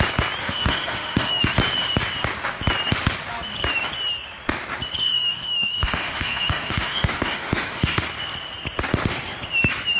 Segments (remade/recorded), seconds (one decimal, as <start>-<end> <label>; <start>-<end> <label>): 0.0-0.4 recorded; 0.4-1.4 remade; 1.4-5.0 recorded; 5.0-8.0 remade; 8.0-10.0 recorded